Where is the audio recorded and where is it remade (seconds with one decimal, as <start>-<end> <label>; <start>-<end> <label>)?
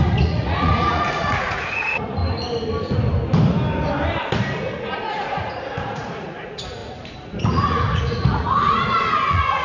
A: 0.0-2.2 remade; 2.2-4.8 recorded; 4.8-6.8 remade; 6.8-7.4 recorded; 7.4-9.6 remade